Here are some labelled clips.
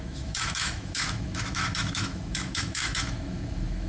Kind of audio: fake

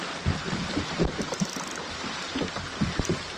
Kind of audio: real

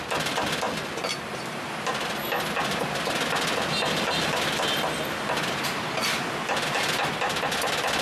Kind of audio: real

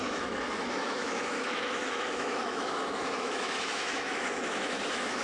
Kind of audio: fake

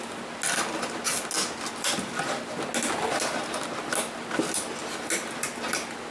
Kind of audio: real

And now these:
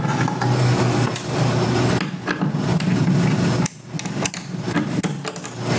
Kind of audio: real